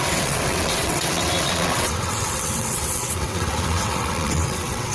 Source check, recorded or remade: remade